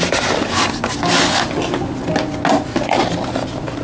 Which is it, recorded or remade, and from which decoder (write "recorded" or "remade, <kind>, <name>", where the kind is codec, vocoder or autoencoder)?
recorded